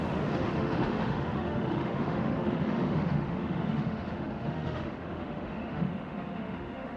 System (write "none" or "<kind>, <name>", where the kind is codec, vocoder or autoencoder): autoencoder, DAC-VAE